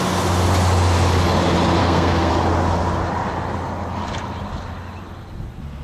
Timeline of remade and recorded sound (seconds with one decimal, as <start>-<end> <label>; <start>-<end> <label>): 0.0-1.8 recorded; 1.8-2.3 remade; 2.3-5.8 recorded